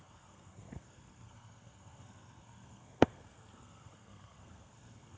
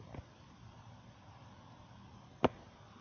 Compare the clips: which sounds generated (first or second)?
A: first